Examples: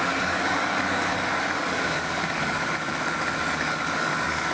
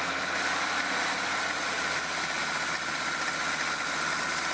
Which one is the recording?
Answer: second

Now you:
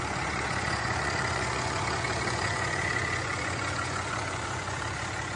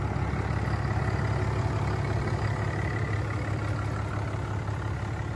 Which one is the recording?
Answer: second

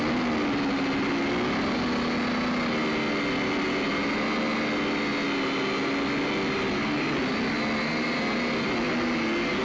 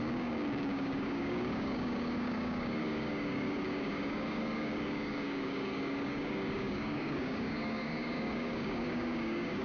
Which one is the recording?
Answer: first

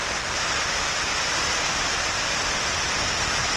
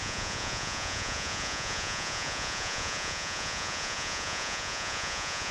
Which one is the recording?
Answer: first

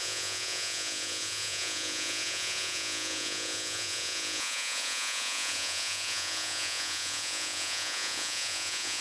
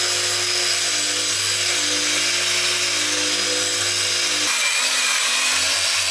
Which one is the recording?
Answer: second